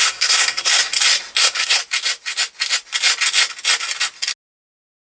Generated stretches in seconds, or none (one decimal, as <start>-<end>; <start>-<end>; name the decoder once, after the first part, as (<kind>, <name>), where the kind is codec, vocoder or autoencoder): 0.0-0.8 (codec, SNAC); 1.4-1.8